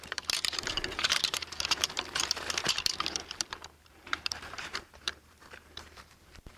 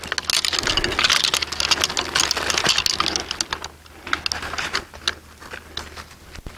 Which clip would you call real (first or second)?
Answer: second